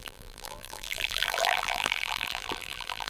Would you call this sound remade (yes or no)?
yes